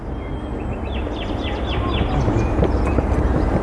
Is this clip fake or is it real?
real